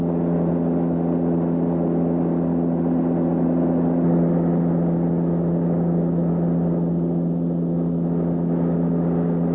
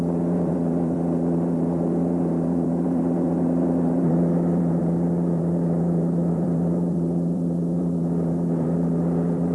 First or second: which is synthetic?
second